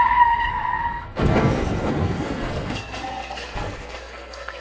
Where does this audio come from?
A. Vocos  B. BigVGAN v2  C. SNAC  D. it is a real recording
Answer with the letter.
C